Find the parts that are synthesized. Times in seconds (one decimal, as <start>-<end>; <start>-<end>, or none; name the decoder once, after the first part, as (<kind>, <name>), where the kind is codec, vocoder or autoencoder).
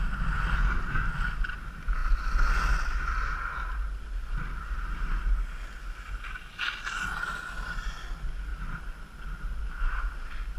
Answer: none